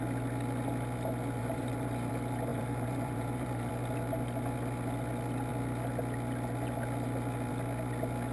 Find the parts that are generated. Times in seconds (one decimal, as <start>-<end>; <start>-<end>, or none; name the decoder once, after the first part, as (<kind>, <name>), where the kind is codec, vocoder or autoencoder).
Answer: 1.4-2.1 (vocoder, BigVGAN v2); 2.5-3.7